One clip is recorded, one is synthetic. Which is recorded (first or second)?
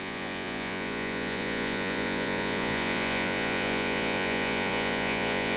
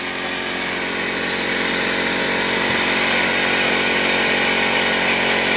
second